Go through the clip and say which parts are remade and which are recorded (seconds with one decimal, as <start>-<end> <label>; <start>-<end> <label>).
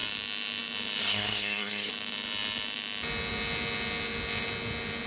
0.0-1.0 recorded; 1.0-1.9 remade; 1.9-5.1 recorded